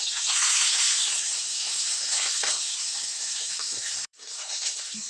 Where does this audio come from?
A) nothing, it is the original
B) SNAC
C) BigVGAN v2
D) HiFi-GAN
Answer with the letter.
B